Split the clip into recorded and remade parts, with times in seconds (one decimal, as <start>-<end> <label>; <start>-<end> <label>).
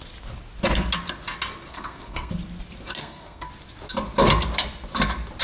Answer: 0.0-1.7 recorded; 1.7-2.3 remade; 2.3-3.0 recorded; 3.0-3.5 remade; 3.5-5.4 recorded